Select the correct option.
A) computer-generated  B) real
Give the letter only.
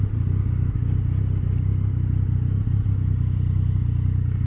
B